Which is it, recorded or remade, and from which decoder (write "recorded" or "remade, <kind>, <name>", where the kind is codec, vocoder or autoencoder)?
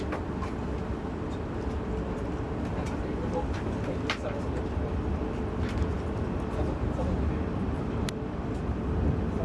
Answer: recorded